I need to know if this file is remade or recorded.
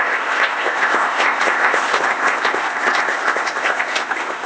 remade